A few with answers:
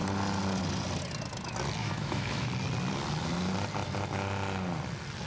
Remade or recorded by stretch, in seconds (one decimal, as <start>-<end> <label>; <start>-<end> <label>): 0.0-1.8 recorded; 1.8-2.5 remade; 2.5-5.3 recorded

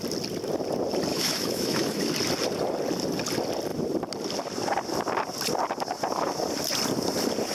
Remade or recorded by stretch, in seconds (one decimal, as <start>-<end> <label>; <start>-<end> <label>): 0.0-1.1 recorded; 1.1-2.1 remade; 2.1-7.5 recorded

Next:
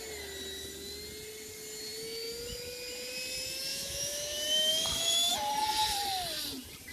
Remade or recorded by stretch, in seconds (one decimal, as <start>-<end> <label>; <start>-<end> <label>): 0.0-3.7 recorded; 3.7-5.3 remade; 5.3-6.9 recorded

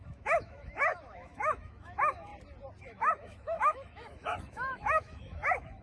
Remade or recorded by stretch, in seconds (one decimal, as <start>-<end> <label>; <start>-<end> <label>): 0.0-2.3 remade; 2.3-2.8 recorded; 2.8-5.8 remade

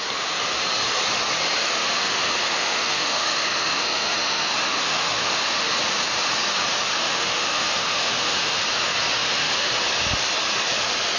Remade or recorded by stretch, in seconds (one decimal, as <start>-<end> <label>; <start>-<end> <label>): 0.0-1.6 recorded; 1.6-5.7 remade; 5.7-6.9 recorded; 6.9-8.6 remade; 8.6-9.2 recorded; 9.2-9.7 remade; 9.7-11.2 recorded

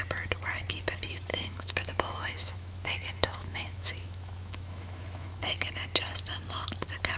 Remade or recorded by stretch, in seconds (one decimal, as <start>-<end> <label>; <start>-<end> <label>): 0.0-1.3 recorded; 1.3-5.4 remade; 5.4-7.2 recorded

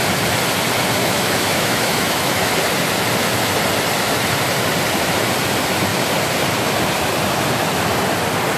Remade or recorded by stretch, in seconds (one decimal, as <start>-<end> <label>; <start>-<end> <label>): 0.0-1.0 recorded; 1.0-2.5 remade; 2.5-8.6 recorded

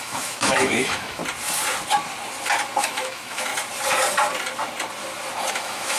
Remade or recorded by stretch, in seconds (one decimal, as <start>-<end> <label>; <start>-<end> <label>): 0.0-1.2 remade; 1.2-2.8 recorded; 2.8-3.5 remade; 3.5-5.5 recorded; 5.5-6.0 remade